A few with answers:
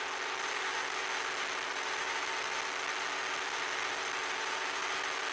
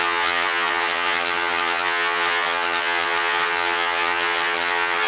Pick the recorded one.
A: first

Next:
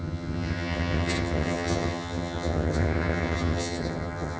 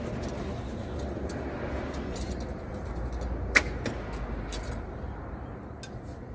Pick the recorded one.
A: second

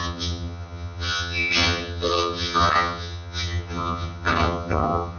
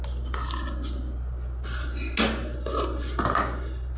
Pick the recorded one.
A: second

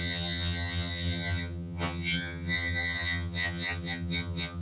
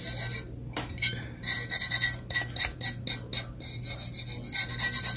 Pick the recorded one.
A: second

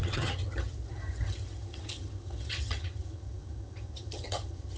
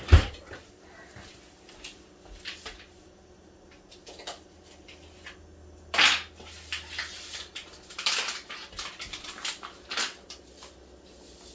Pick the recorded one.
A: second